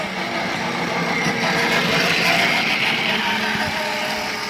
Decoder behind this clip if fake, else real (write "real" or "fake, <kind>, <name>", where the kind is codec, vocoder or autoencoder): real